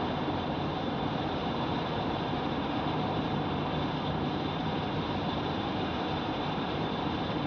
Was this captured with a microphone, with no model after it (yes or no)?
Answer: no